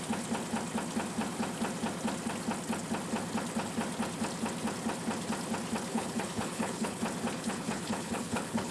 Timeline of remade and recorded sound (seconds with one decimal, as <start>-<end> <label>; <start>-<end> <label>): 0.0-5.9 recorded; 5.9-7.0 remade; 7.0-7.4 recorded; 7.4-8.7 remade